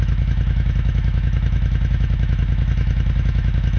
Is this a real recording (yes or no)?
no